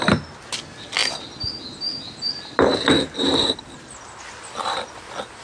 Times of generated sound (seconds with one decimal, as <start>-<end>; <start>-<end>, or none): none